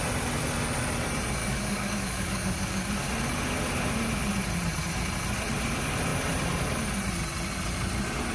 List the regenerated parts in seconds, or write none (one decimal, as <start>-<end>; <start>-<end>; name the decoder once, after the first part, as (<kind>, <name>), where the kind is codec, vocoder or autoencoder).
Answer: 1.4-2.9 (codec, DAC)